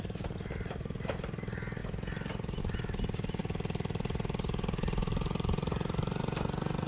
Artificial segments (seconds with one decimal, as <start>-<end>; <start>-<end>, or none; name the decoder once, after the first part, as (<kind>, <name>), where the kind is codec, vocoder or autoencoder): 0.0-1.8 (vocoder, BigVGAN v2); 2.6-6.9